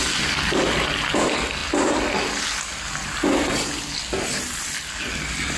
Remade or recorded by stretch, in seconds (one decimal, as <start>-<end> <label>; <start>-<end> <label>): 0.0-5.6 recorded